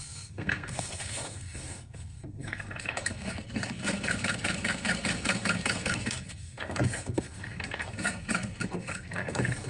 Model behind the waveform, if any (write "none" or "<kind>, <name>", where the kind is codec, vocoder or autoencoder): codec, SNAC